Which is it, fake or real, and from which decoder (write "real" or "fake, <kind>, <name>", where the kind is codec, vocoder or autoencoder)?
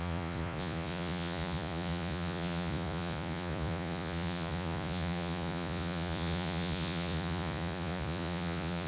fake, vocoder, Vocos